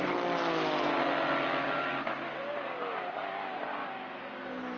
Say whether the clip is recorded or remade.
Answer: recorded